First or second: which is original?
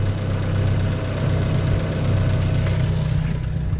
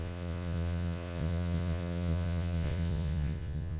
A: first